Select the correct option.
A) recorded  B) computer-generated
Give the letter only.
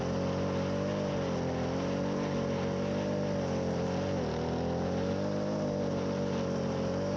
A